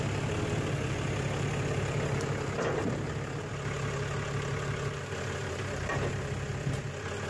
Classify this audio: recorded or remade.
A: recorded